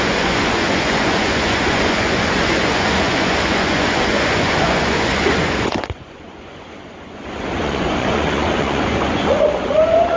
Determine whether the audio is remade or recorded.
remade